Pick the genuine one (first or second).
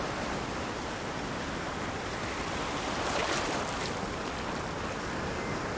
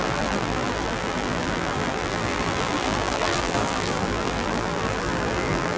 first